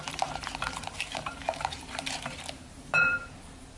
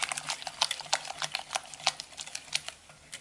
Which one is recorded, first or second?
second